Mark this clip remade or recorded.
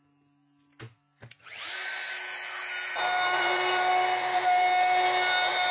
recorded